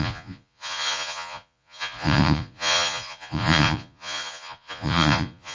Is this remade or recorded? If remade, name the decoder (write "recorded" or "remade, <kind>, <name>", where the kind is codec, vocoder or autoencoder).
remade, vocoder, Vocos